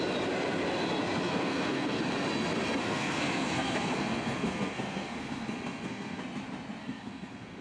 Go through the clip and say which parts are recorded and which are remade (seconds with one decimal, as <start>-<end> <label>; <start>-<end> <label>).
0.0-1.3 recorded; 1.3-2.0 remade; 2.0-2.8 recorded; 2.8-6.2 remade; 6.2-6.8 recorded; 6.8-7.6 remade